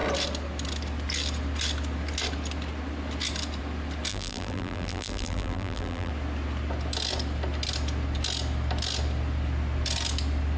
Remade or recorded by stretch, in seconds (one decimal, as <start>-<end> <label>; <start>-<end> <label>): 0.0-4.1 recorded; 4.1-6.1 remade; 6.1-10.6 recorded